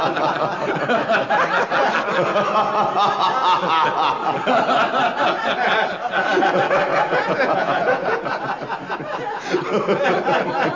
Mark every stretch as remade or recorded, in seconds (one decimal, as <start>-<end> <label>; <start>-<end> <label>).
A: 0.0-6.9 recorded; 6.9-8.4 remade; 8.4-10.8 recorded